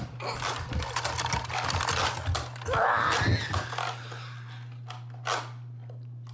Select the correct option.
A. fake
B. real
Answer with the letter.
B